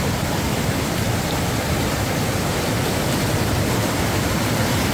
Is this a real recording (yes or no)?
yes